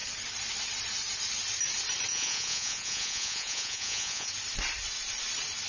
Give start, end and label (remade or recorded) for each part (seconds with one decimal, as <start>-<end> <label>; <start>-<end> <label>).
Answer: 0.0-2.1 recorded; 2.1-4.3 remade; 4.3-5.7 recorded